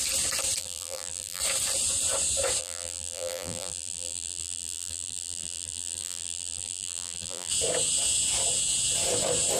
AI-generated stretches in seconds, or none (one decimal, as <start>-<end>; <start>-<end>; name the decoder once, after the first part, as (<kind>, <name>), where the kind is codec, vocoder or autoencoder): 0.6-1.4 (vocoder, BigVGAN v2); 2.6-7.5